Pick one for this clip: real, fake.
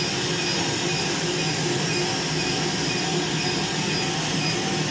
real